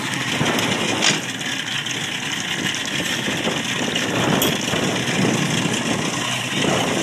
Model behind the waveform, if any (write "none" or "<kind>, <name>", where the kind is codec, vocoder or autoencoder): none